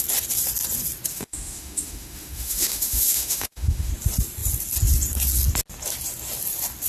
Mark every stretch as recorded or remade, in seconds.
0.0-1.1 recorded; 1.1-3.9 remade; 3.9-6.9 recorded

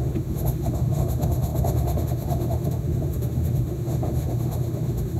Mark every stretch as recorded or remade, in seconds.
0.0-5.2 remade

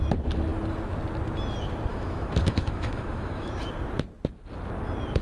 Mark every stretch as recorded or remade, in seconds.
0.0-1.9 recorded; 1.9-3.7 remade; 3.7-5.2 recorded

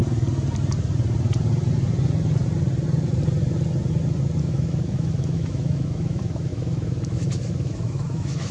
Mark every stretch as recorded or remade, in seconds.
0.0-4.4 recorded; 4.4-8.5 remade

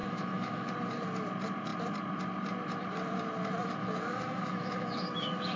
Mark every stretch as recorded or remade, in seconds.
0.0-0.7 remade; 0.7-3.6 recorded; 3.6-5.6 remade